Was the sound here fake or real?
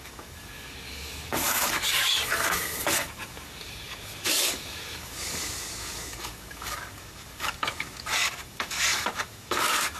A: fake